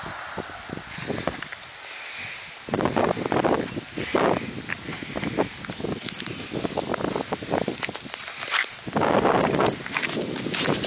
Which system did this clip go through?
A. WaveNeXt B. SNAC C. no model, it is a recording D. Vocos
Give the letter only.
C